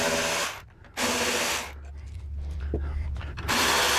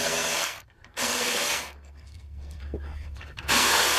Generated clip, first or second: second